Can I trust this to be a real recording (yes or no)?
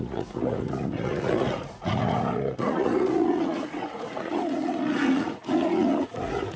no